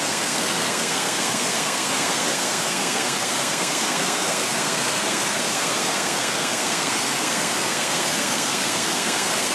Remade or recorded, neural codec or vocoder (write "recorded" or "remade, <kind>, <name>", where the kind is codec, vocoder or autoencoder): remade, codec, SNAC